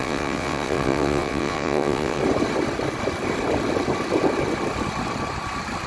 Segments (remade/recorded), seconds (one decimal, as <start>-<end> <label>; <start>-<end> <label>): 0.0-2.2 remade; 2.2-5.9 recorded